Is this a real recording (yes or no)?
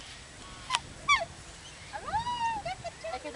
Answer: yes